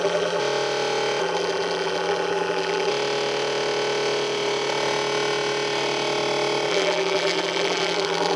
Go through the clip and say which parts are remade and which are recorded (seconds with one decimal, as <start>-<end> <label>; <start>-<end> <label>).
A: 0.0-0.4 remade; 0.4-1.2 recorded; 1.2-2.9 remade; 2.9-6.7 recorded; 6.7-8.4 remade